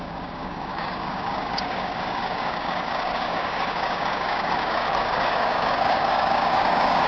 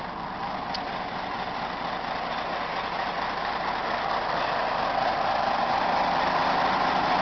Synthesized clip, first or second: first